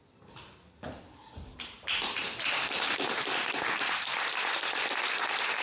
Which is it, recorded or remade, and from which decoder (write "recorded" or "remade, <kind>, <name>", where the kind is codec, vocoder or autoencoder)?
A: recorded